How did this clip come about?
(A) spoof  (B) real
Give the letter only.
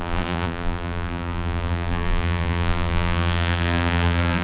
A